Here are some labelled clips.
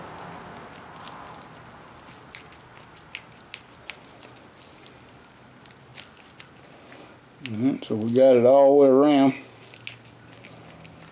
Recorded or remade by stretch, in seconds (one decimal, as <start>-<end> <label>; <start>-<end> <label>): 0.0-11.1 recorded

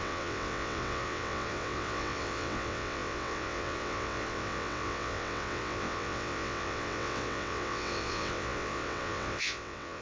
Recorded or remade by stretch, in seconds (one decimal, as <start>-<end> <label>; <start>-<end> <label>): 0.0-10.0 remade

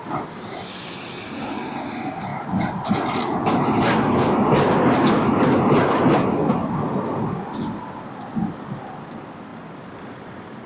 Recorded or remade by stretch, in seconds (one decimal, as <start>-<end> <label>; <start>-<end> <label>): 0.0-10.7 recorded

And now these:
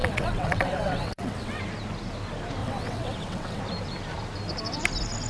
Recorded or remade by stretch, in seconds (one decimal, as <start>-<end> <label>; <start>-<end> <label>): 0.0-1.6 remade; 1.6-2.6 recorded; 2.6-3.6 remade; 3.6-5.3 recorded